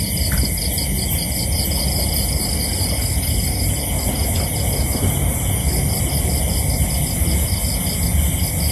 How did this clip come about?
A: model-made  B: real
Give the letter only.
B